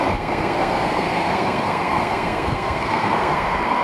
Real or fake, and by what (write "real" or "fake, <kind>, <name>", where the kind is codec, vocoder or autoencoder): fake, codec, SNAC